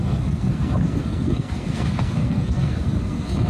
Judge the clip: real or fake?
fake